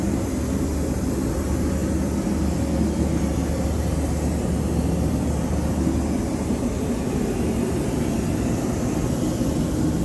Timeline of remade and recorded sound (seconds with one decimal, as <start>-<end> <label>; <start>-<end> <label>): 0.0-10.0 recorded